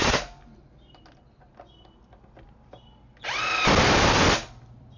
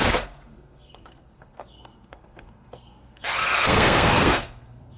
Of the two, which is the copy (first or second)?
second